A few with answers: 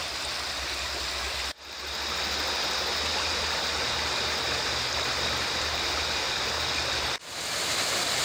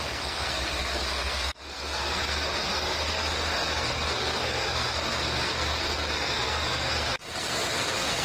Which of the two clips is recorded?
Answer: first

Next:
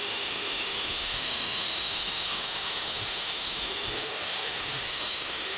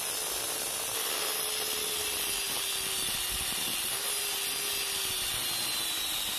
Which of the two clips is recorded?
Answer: second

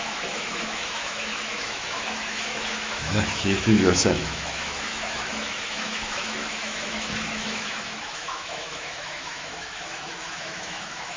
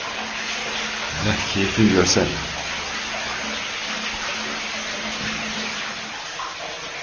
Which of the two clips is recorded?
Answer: second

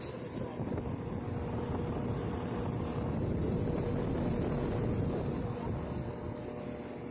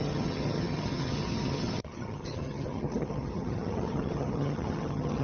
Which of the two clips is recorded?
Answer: first